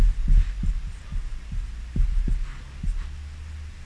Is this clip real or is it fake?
real